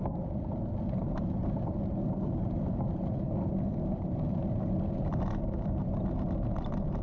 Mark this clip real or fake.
real